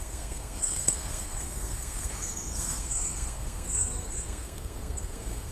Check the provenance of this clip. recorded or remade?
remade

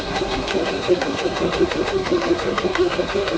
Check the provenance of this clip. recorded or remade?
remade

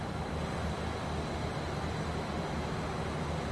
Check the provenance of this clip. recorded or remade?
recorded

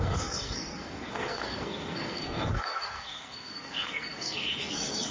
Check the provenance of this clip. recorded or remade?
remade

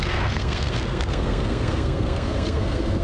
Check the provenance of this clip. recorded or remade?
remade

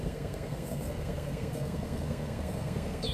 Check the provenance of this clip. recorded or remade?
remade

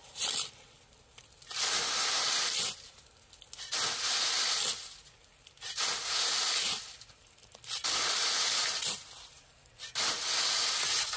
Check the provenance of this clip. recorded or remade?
recorded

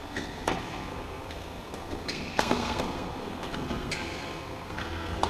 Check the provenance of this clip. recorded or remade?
remade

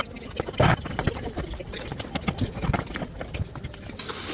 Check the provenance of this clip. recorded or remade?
recorded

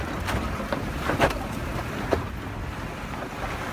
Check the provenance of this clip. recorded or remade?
recorded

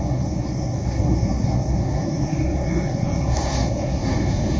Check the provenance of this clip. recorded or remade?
remade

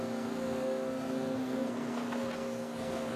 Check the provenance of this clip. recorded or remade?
remade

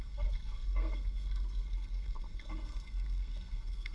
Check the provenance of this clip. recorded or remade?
remade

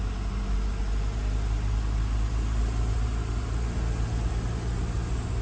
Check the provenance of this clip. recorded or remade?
recorded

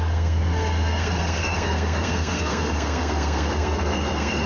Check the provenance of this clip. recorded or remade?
remade